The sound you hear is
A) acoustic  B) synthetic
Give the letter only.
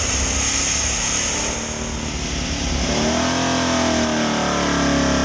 A